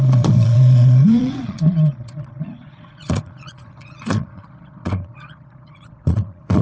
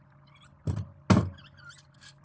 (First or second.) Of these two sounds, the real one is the second